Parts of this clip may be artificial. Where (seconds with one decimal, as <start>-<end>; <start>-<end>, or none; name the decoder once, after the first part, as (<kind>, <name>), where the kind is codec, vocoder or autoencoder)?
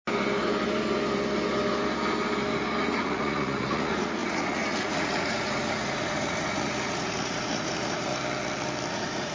2.8-8.1 (vocoder, Vocos); 8.9-9.3